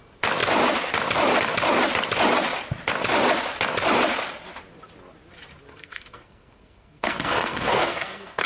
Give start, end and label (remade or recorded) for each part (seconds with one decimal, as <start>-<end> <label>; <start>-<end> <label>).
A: 0.0-5.7 recorded; 5.7-8.5 remade